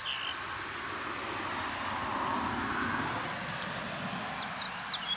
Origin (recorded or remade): recorded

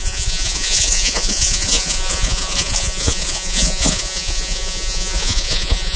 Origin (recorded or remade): remade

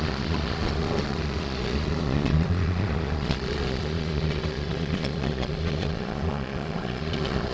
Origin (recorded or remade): remade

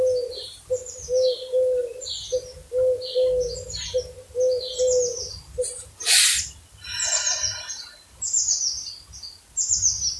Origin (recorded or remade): recorded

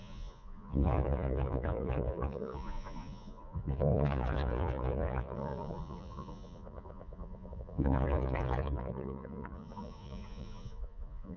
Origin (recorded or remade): remade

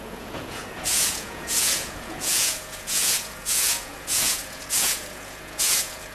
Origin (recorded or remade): remade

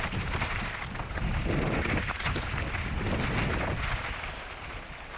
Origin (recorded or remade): recorded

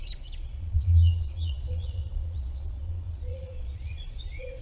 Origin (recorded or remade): remade